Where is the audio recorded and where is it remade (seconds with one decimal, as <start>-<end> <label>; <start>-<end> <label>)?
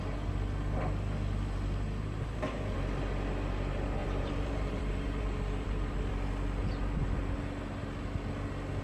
0.0-4.0 recorded; 4.0-6.1 remade; 6.1-8.8 recorded